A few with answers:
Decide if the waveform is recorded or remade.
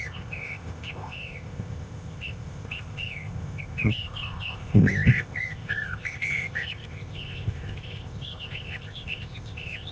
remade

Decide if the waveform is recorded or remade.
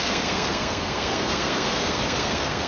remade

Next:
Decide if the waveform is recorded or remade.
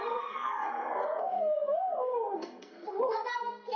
remade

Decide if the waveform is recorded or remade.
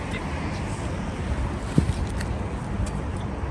recorded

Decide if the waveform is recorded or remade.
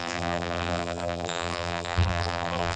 remade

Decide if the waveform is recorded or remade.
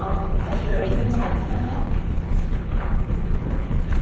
remade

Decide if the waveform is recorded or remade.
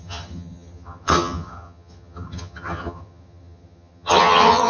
remade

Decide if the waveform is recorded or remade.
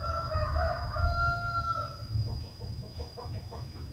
remade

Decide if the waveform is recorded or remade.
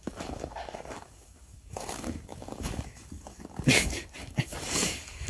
remade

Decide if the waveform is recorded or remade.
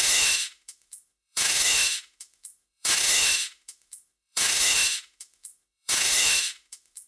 remade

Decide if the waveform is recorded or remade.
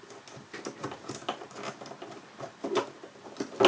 recorded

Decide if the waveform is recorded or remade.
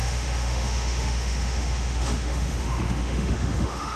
remade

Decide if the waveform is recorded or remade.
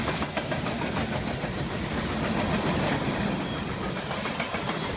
recorded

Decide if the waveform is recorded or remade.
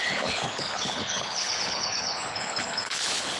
remade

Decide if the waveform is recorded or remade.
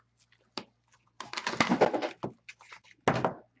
recorded